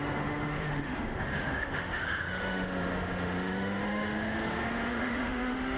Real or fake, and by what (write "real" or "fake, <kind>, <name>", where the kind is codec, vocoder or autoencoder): fake, autoencoder, DAC-VAE